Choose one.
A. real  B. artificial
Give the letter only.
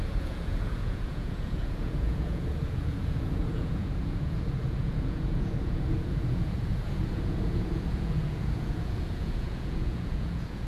B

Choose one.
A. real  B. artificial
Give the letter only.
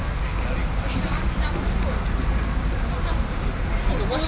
A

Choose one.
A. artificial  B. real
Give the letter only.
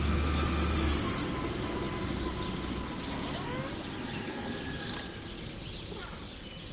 B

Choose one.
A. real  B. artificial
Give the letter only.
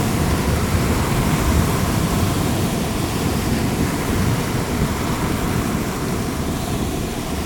B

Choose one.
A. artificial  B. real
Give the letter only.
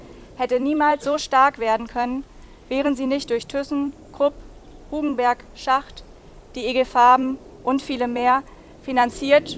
A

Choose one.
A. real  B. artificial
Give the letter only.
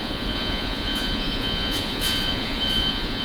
B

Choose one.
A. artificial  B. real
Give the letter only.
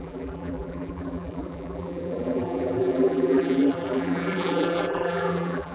A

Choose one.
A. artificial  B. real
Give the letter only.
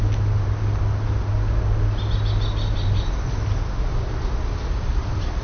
B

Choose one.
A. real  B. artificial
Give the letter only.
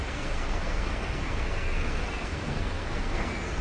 B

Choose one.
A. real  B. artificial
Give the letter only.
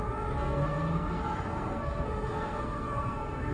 B